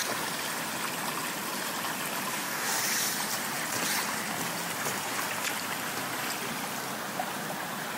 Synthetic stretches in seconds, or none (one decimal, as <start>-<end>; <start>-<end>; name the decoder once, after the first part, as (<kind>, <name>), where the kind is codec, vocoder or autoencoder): 2.3-2.8 (codec, DAC)